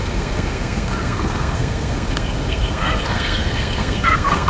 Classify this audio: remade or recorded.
remade